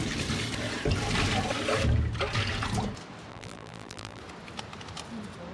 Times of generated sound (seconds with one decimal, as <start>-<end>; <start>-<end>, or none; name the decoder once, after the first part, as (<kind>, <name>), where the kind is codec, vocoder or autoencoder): 3.3-4.2 (vocoder, BigVGAN v2)

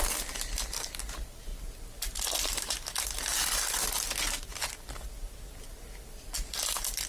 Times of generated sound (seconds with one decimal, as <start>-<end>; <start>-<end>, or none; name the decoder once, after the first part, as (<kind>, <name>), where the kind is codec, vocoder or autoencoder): none

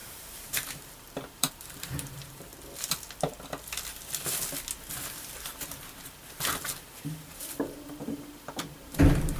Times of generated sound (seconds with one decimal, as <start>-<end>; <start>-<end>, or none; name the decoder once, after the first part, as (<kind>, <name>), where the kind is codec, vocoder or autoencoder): 0.0-2.5 (vocoder, BigVGAN v2); 6.9-9.4

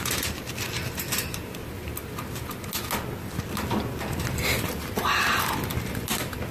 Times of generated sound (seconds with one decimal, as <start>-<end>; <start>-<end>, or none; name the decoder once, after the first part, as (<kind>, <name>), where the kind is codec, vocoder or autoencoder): none

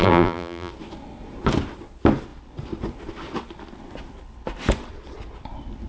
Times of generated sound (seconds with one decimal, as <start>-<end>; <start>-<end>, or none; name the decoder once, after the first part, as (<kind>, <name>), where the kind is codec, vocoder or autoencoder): 0.0-0.7 (vocoder, BigVGAN v2)

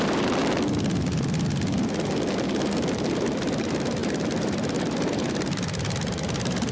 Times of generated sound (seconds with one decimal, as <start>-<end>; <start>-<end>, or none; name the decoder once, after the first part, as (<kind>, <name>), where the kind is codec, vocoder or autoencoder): 0.0-0.4 (vocoder, BigVGAN v2); 3.4-6.7